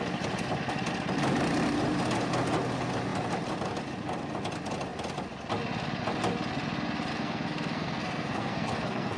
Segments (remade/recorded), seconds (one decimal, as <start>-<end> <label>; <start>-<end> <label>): 0.0-7.1 recorded; 7.1-9.2 remade